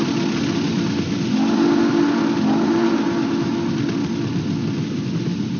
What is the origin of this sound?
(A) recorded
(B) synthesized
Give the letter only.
A